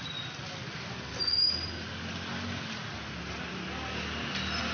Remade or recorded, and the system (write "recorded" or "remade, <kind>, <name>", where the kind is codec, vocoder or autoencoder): recorded